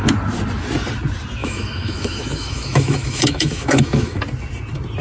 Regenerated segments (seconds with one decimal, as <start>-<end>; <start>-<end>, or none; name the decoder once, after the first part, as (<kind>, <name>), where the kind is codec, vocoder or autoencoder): 1.4-4.2 (autoencoder, DAC-VAE)